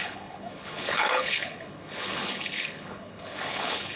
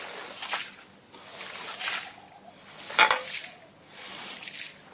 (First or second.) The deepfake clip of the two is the first